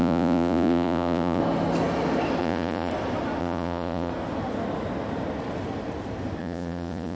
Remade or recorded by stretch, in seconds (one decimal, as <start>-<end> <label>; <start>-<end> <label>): 0.0-1.4 remade; 1.4-2.4 recorded; 2.4-2.9 remade; 2.9-3.4 recorded; 3.4-4.1 remade; 4.1-6.4 recorded; 6.4-7.1 remade